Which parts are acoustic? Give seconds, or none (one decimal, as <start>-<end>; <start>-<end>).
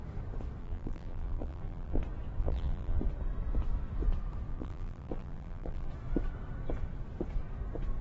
0.0-0.6; 2.0-2.4; 3.0-4.5; 5.9-8.0